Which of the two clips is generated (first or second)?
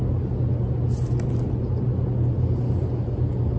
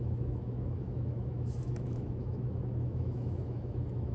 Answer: second